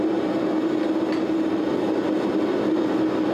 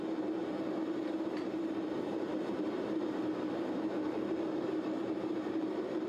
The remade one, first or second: second